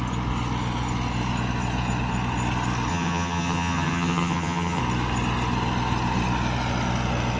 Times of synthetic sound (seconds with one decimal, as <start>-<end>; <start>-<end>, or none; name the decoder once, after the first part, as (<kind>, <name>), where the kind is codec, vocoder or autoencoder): 2.9-4.8 (vocoder, HiFi-GAN)